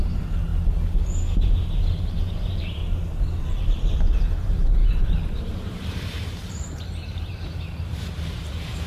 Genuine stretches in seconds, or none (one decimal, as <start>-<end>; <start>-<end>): 0.5-2.1; 2.8-3.4